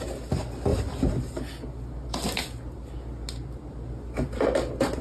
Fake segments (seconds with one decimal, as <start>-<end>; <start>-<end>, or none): none